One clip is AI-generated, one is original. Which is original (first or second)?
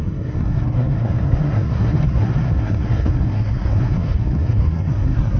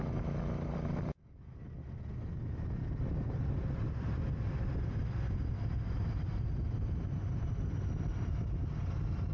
second